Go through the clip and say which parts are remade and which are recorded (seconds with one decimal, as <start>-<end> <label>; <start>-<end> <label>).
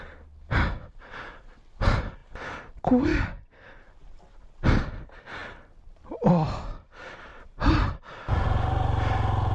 0.0-7.3 recorded; 7.3-7.9 remade; 7.9-9.5 recorded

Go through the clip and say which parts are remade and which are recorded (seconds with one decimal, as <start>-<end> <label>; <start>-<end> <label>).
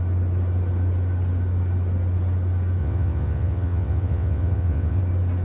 0.0-2.8 recorded; 2.8-5.0 remade; 5.0-5.4 recorded